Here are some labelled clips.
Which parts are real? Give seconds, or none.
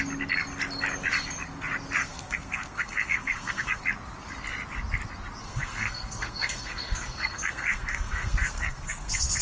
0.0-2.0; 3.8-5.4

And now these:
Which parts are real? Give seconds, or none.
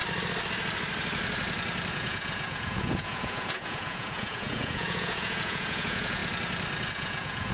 0.0-1.9; 6.2-6.9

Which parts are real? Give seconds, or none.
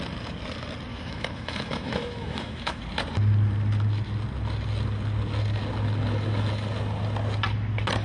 0.0-0.9; 2.8-8.0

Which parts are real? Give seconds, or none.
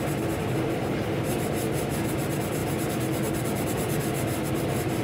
0.0-5.0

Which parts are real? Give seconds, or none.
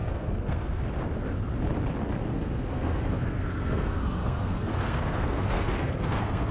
0.8-2.3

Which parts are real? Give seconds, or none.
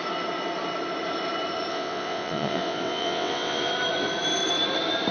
0.0-1.7; 3.7-5.1